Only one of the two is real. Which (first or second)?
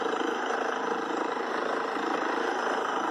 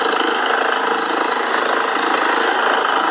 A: second